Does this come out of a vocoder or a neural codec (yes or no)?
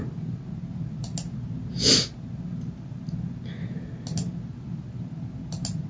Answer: no